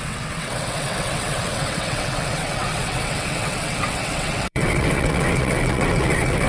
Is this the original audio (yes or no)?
no